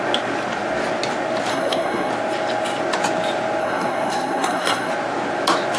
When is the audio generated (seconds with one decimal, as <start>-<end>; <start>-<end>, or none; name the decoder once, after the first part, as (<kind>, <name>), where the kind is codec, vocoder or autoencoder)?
1.5-2.1 (codec, SNAC); 3.6-4.9